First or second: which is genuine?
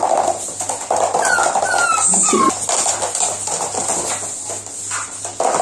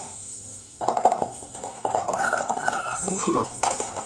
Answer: first